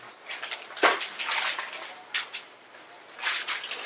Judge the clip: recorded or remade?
recorded